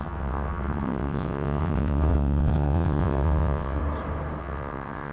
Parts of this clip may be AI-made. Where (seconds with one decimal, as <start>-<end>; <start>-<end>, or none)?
0.0-3.8; 4.4-5.1